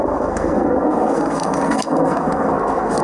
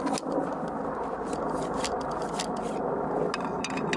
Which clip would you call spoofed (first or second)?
first